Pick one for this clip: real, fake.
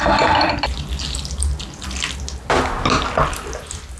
real